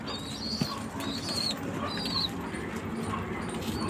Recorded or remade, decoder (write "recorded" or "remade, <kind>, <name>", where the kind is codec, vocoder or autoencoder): recorded